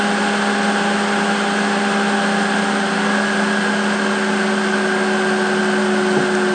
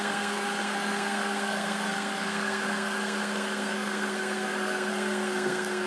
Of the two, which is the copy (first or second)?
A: second